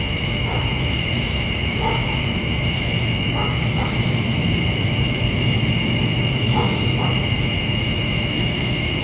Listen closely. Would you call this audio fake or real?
fake